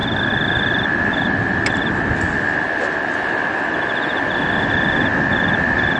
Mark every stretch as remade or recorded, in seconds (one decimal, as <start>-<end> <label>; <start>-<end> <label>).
0.0-6.0 recorded

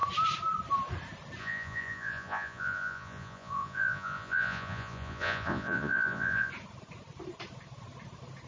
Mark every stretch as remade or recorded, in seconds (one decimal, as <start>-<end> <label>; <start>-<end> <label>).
0.0-1.4 recorded; 1.4-6.5 remade; 6.5-8.5 recorded